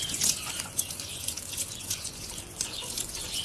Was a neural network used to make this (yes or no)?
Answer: yes